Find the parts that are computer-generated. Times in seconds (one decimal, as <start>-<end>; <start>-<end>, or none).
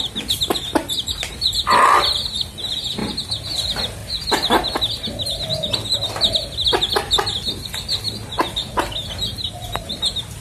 9.3-10.0